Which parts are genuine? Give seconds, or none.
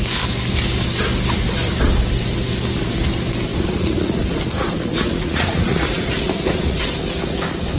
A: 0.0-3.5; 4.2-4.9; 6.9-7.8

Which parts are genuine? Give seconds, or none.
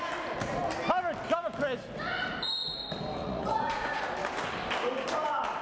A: 0.0-3.2; 4.0-5.6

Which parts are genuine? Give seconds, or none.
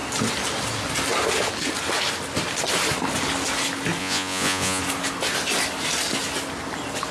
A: 0.0-4.0; 4.8-7.1